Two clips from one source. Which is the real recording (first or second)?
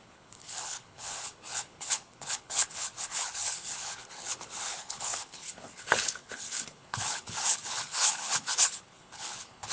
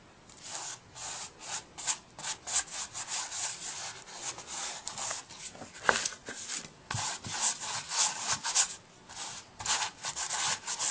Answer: second